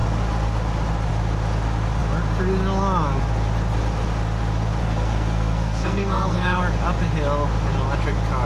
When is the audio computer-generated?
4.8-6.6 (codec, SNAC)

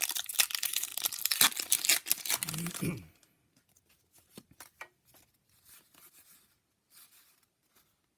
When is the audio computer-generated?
none